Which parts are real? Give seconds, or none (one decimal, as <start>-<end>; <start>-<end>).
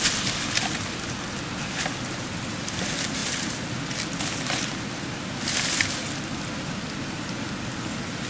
0.0-8.3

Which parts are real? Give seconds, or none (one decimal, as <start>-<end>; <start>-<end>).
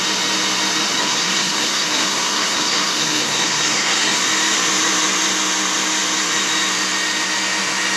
0.0-1.0; 4.2-8.0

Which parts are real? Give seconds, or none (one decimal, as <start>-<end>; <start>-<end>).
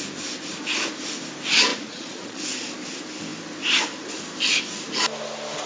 0.0-1.7; 2.4-5.7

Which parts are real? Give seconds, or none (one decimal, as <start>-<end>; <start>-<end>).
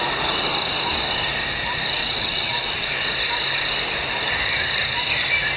0.0-2.0; 2.9-5.6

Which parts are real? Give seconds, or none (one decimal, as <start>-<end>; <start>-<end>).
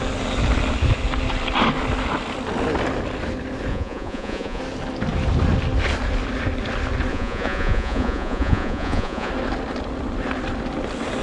0.0-3.7; 4.6-7.1; 9.3-11.2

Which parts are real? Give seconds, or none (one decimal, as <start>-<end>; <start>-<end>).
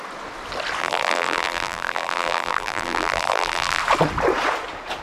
0.0-0.8; 3.8-5.0